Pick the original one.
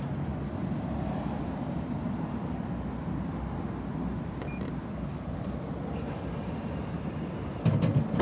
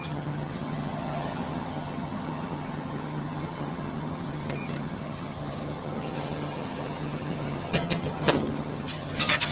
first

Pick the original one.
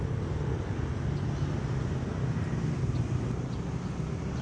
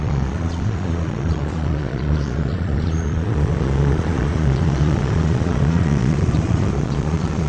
first